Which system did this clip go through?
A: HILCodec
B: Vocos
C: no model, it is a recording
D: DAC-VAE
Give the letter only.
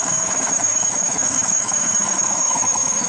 D